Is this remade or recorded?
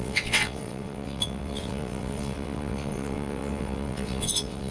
remade